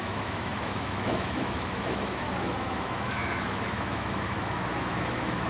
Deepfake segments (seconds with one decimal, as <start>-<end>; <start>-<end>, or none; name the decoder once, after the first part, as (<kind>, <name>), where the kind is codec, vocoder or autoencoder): 0.0-5.5 (autoencoder, DAC-VAE)